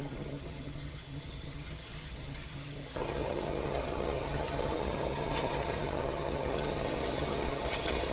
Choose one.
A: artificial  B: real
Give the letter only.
A